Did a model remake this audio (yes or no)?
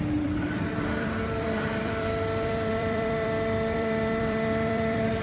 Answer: yes